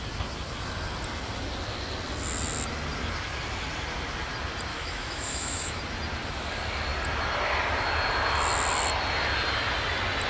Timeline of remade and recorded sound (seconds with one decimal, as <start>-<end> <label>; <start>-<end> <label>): 0.0-4.7 recorded; 4.7-5.8 remade; 5.8-10.3 recorded